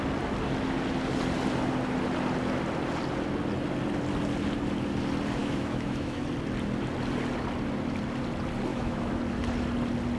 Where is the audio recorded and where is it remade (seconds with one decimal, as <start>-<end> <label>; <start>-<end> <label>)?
0.0-5.4 recorded; 5.4-6.2 remade; 6.2-8.7 recorded; 8.7-9.2 remade; 9.2-10.2 recorded